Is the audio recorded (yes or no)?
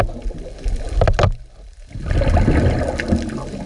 yes